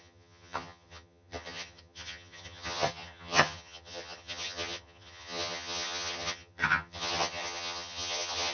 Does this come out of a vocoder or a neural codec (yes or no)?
yes